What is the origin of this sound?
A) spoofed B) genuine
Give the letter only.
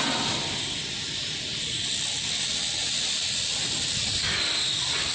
B